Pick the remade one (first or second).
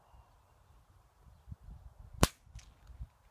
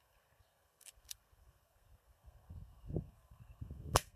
second